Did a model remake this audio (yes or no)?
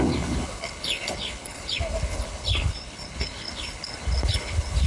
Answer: yes